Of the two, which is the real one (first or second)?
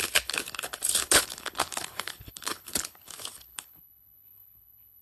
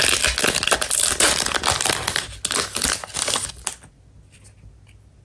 second